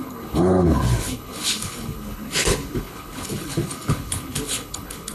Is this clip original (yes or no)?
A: no